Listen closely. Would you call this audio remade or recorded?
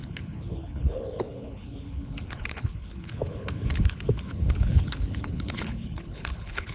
remade